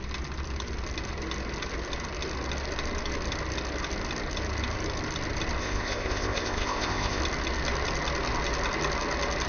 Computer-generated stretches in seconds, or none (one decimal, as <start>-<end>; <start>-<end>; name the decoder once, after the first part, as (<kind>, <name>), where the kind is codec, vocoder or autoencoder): 5.6-7.2 (codec, ZipCodec)